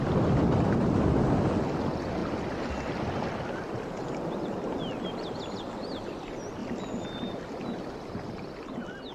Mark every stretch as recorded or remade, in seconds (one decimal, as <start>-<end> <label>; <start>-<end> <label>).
0.0-9.1 recorded